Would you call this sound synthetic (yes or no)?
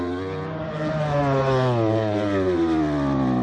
no